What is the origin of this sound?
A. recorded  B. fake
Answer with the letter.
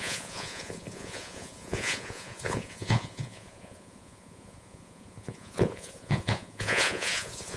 B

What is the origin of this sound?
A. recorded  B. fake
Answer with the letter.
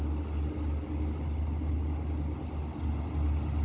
A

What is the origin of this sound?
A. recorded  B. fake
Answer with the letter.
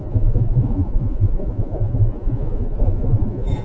B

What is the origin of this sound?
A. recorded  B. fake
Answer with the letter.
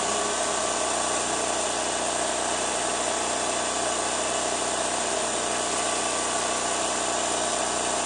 A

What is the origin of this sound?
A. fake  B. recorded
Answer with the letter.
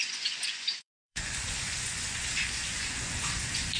A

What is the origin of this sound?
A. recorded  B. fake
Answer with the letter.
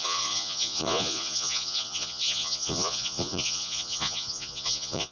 B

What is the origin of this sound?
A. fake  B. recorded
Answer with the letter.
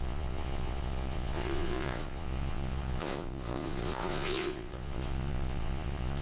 A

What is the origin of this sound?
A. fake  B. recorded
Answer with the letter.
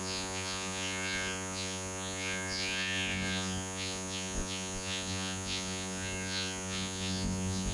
A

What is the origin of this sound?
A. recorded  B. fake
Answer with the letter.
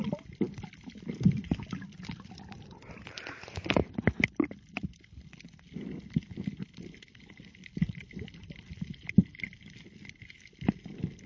A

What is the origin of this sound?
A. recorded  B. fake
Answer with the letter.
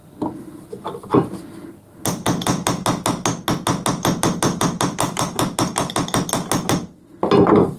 A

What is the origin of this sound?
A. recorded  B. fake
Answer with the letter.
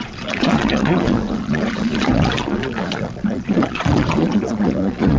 B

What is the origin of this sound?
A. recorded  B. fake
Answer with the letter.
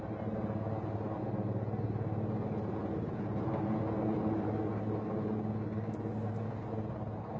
A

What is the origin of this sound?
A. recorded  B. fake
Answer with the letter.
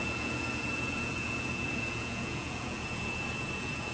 B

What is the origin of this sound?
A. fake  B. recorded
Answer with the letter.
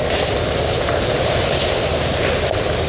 B